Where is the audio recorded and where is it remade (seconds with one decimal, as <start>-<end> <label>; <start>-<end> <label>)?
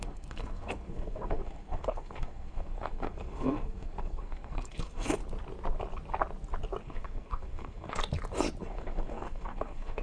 0.0-5.2 remade; 5.2-6.8 recorded; 6.8-8.0 remade; 8.0-8.6 recorded; 8.6-10.0 remade